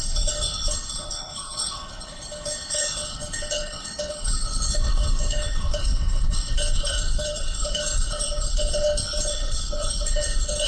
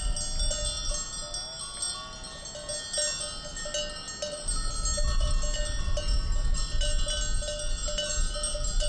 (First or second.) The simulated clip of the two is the first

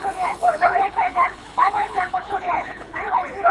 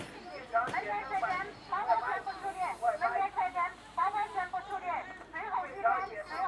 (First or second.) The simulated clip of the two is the first